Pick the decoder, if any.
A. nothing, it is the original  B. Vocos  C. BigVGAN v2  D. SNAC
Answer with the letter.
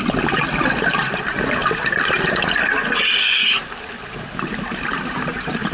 A